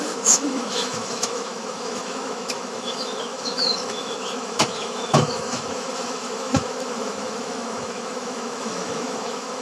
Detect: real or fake fake